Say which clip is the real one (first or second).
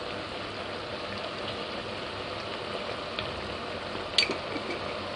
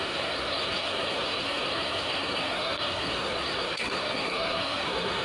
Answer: first